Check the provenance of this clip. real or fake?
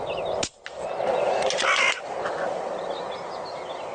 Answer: real